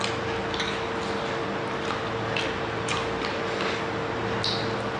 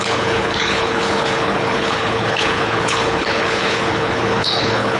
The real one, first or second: first